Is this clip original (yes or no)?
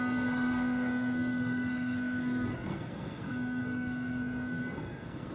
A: no